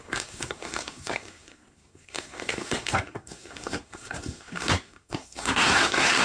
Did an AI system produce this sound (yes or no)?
yes